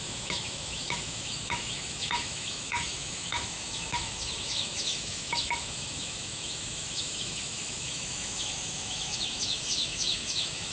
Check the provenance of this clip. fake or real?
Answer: fake